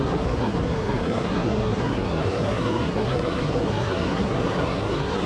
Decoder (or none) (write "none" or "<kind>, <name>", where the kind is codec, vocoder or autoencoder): codec, SNAC